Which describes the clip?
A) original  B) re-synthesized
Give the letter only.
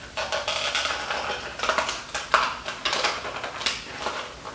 A